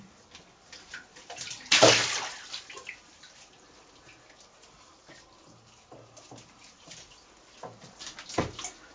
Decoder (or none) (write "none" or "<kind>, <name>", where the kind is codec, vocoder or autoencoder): none